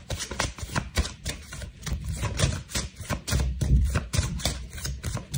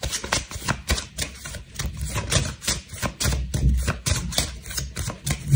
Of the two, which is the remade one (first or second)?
first